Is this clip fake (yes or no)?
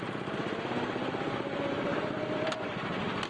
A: no